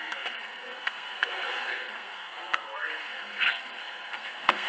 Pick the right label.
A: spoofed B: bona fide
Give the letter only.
A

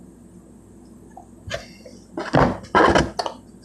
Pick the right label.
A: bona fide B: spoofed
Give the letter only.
A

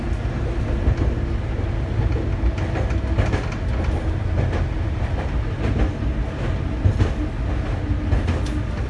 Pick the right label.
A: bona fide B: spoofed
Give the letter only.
A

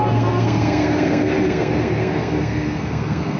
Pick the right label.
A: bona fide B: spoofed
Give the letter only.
B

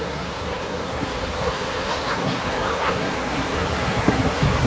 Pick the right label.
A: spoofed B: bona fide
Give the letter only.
A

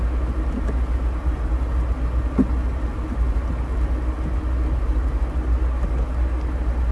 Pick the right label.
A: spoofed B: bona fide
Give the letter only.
B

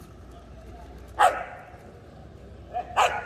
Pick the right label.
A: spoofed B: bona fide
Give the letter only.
B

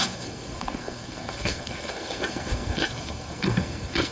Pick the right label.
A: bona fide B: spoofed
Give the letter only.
B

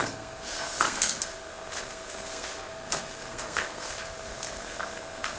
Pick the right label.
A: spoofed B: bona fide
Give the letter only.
A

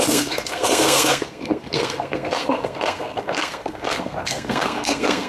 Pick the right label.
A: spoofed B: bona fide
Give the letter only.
A